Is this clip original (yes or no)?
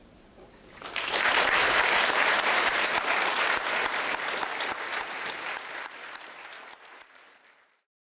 no